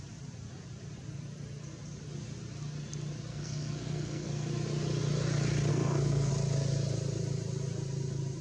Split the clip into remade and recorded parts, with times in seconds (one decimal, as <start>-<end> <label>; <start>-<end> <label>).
0.0-3.3 recorded; 3.3-4.5 remade; 4.5-5.7 recorded; 5.7-6.3 remade; 6.3-8.4 recorded